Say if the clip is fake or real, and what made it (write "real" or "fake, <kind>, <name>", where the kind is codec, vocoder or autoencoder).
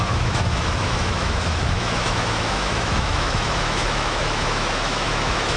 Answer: fake, autoencoder, DAC-VAE